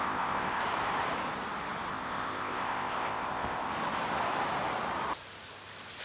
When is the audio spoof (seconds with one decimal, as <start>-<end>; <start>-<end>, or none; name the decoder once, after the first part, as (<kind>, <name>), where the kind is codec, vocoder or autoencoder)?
0.0-0.6 (codec, ZipCodec); 1.9-3.7